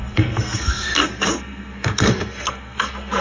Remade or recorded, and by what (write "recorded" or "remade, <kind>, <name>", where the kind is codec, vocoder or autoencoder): remade, codec, SNAC